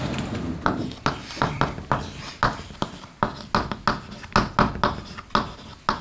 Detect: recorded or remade recorded